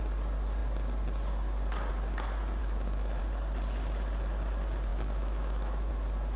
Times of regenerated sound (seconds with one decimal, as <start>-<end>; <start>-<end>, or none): 2.6-3.2; 4.9-5.9